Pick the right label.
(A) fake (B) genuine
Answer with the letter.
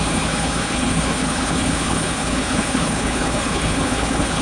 A